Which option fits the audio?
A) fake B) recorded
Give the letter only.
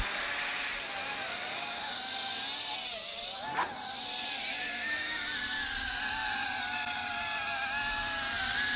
B